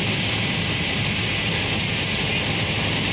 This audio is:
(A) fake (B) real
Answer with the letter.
B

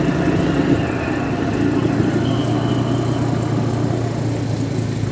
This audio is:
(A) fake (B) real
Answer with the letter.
B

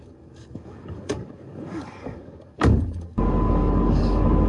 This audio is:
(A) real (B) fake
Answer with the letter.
B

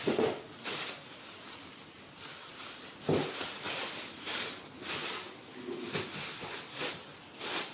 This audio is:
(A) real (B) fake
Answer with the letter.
A